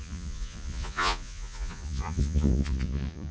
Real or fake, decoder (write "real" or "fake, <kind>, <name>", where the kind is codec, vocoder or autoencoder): fake, vocoder, Vocos